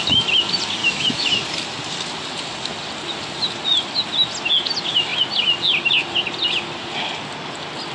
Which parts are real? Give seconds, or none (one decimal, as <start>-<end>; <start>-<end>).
0.0-0.8; 1.3-7.9